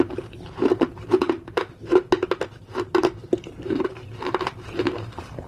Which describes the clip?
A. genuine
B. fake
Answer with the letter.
B